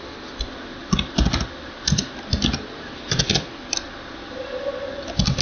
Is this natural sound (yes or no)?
yes